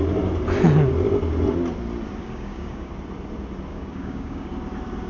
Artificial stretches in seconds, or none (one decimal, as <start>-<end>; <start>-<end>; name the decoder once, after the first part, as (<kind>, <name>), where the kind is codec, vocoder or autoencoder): 2.2-2.9 (codec, DAC); 3.7-4.5